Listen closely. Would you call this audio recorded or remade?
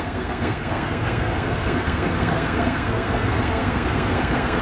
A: remade